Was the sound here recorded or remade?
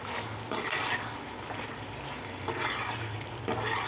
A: recorded